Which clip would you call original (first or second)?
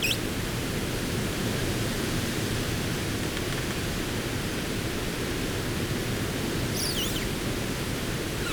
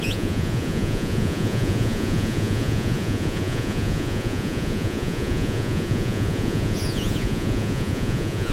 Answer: first